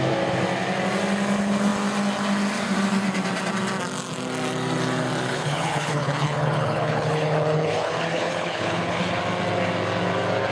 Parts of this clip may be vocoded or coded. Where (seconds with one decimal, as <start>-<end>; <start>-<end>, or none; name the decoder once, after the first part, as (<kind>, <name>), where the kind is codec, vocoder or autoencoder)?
5.3-9.2 (codec, HILCodec)